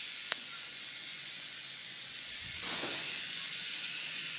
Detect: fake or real fake